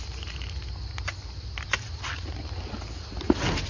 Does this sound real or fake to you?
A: real